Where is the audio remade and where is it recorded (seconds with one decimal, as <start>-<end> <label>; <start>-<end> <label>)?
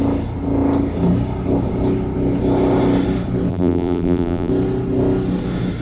0.0-3.5 recorded; 3.5-4.5 remade; 4.5-5.8 recorded